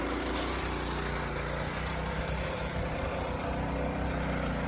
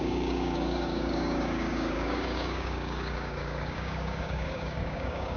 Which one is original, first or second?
first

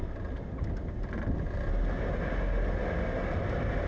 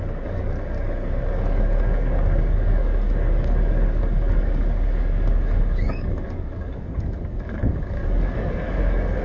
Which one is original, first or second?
first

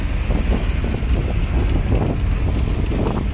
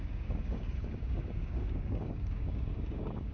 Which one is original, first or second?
first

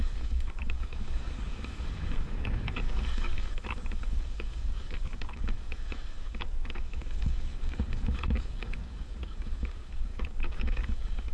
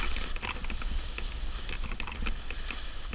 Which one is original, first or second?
second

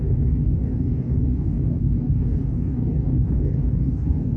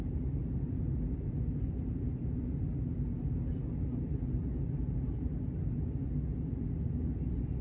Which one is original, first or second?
second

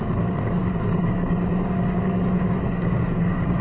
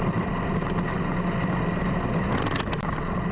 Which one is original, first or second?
second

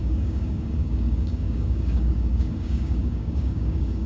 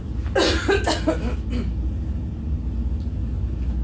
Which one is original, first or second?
second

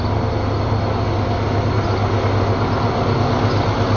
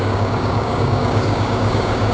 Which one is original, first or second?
first